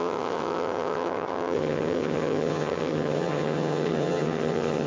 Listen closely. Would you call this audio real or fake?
fake